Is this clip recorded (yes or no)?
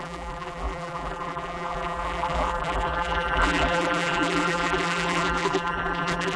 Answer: no